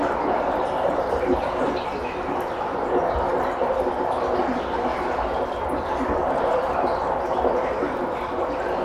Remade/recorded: recorded